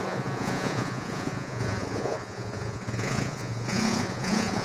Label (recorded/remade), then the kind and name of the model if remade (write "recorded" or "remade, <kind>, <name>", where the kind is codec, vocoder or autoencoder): remade, vocoder, Vocos